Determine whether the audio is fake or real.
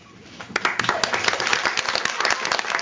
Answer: real